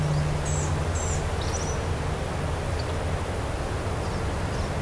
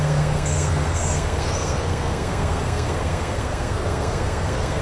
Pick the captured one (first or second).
first